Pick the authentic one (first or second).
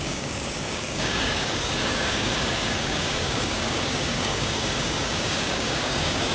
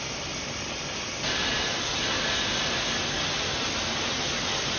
second